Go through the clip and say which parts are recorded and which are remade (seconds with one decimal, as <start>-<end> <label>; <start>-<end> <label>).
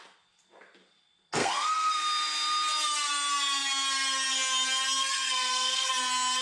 0.0-1.4 recorded; 1.4-1.9 remade; 1.9-5.0 recorded; 5.0-5.9 remade; 5.9-6.4 recorded